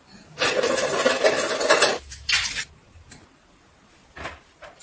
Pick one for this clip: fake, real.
real